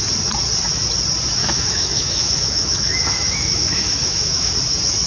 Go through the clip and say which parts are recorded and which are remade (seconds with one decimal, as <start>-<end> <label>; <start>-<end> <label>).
0.0-1.4 recorded; 1.4-4.5 remade; 4.5-5.1 recorded